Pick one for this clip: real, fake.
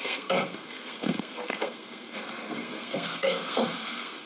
fake